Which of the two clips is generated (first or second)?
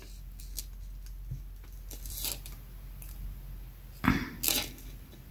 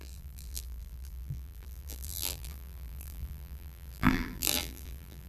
second